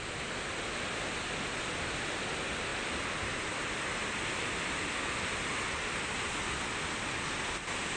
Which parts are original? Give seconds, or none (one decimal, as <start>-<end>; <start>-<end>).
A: 0.0-2.7; 3.2-8.0